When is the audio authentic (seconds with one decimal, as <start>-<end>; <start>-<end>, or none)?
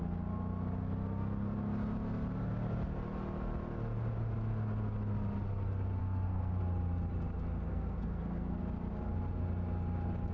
0.0-6.0; 6.6-7.7; 8.6-10.3